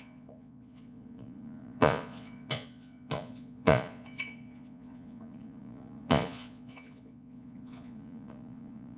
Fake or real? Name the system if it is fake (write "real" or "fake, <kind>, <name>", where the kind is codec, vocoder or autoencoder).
fake, vocoder, Vocos